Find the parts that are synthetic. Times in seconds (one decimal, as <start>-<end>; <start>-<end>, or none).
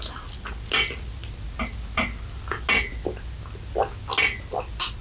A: none